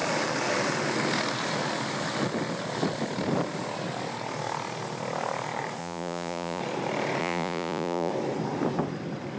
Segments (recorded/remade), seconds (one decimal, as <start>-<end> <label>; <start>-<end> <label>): 0.0-5.8 recorded; 5.8-6.6 remade; 6.6-7.2 recorded; 7.2-8.1 remade; 8.1-9.4 recorded